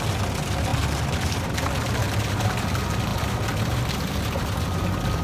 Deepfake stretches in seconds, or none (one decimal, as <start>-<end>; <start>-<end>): none